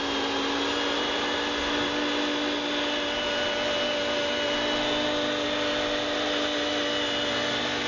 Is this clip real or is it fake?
real